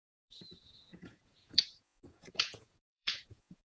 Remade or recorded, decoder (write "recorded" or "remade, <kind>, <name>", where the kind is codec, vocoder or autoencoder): remade, vocoder, Vocos